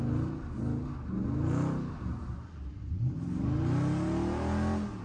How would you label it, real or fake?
real